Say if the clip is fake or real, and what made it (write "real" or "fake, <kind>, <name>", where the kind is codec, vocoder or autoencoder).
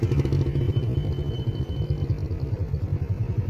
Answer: real